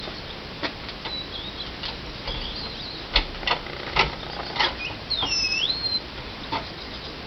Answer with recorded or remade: recorded